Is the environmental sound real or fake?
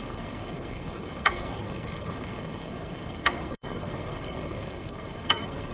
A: fake